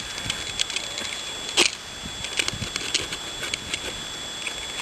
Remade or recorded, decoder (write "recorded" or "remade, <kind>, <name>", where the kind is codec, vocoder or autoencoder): recorded